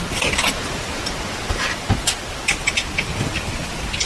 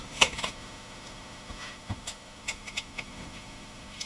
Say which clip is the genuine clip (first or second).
first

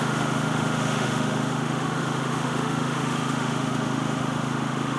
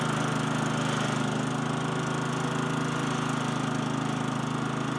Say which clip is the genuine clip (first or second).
second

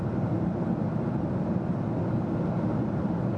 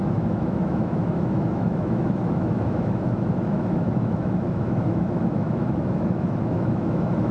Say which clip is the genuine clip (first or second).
first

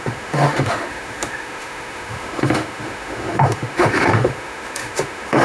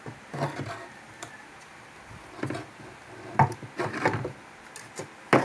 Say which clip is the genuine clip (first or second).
second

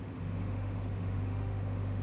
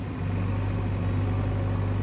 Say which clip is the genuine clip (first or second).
second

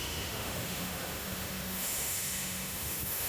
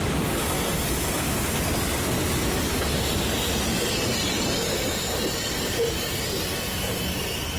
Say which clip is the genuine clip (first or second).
second